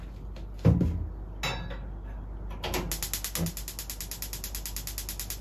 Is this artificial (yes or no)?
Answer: no